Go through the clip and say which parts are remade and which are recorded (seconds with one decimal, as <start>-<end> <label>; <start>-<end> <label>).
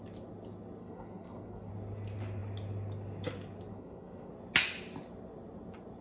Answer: 0.0-0.8 recorded; 0.8-1.7 remade; 1.7-3.7 recorded; 3.7-4.3 remade; 4.3-6.0 recorded